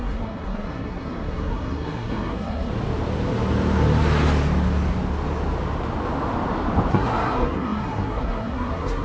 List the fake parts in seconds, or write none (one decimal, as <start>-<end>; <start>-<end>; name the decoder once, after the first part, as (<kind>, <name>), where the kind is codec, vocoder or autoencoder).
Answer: 0.0-2.7 (codec, SNAC); 6.9-9.0